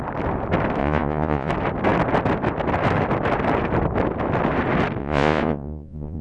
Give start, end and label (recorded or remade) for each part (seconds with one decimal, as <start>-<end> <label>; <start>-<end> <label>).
0.0-0.8 recorded; 0.8-1.5 remade; 1.5-5.0 recorded; 5.0-6.2 remade